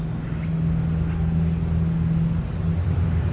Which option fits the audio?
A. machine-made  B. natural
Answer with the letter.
B